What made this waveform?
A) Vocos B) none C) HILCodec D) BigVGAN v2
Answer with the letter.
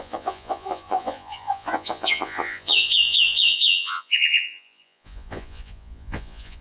A